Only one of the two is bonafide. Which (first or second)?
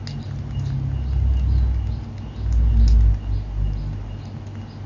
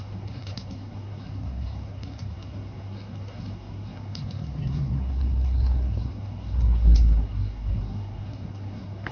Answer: first